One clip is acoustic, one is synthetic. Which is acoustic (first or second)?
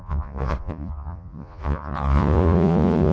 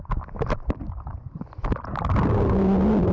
second